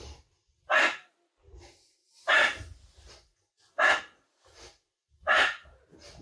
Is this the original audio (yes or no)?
yes